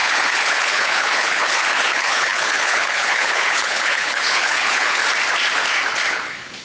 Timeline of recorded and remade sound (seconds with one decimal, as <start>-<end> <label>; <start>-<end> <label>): 0.0-5.0 remade; 5.0-6.1 recorded; 6.1-6.6 remade